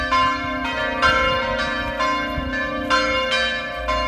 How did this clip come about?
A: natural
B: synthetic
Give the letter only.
A